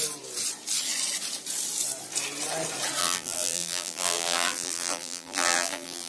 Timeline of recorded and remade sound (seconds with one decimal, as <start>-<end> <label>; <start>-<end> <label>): 0.0-3.0 recorded; 3.0-6.1 remade